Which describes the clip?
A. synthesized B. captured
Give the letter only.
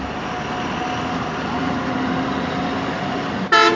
B